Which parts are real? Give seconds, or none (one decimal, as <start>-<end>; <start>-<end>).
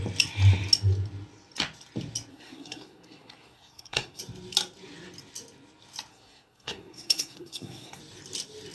0.0-2.3; 4.2-6.1; 8.0-8.7